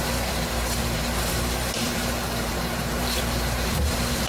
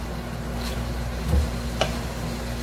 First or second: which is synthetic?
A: first